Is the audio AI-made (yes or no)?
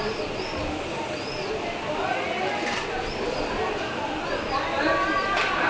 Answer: no